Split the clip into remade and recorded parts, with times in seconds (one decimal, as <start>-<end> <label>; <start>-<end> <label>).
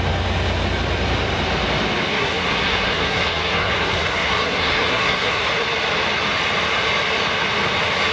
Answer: 0.0-2.1 recorded; 2.1-5.4 remade; 5.4-8.1 recorded